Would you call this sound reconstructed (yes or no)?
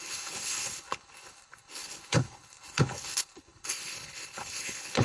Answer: yes